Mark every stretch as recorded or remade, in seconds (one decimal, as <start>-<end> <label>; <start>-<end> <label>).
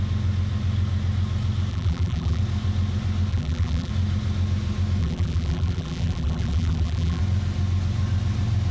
0.0-1.7 recorded; 1.7-2.4 remade; 2.4-3.3 recorded; 3.3-3.9 remade; 3.9-5.0 recorded; 5.0-7.2 remade; 7.2-8.7 recorded